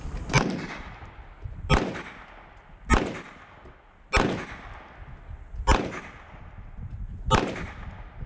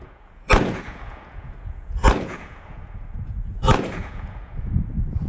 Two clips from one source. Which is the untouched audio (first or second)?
first